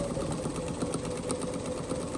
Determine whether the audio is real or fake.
real